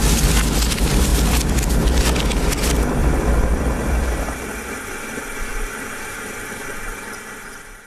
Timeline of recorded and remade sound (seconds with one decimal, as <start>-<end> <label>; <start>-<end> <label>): 0.0-3.0 recorded; 3.0-5.5 remade; 5.5-7.9 recorded